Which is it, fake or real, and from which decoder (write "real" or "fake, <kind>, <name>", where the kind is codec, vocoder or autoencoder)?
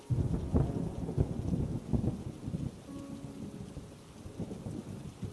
real